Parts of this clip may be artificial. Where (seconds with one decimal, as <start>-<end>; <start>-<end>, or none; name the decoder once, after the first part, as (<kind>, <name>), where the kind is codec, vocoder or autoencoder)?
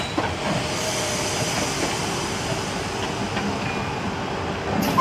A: none